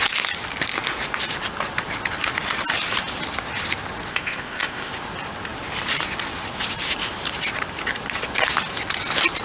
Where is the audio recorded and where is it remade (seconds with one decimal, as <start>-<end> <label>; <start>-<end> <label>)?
0.0-4.1 recorded; 4.1-4.9 remade; 4.9-9.4 recorded